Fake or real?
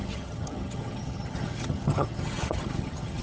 fake